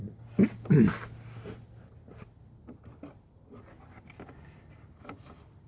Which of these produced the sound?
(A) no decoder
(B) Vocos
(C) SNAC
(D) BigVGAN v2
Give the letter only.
A